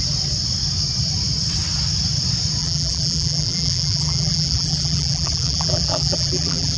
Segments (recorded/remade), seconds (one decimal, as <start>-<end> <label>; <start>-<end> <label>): 0.0-2.6 recorded; 2.6-6.8 remade